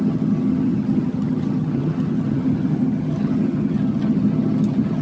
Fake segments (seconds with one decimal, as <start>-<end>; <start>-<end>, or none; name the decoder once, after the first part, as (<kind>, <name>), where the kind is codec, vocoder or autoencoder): 0.0-5.0 (vocoder, HiFi-GAN)